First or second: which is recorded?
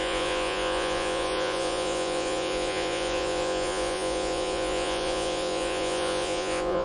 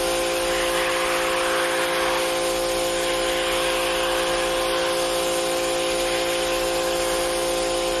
second